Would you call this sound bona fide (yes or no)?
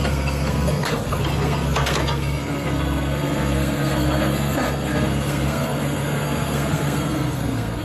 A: no